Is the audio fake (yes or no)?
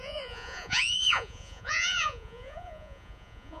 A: yes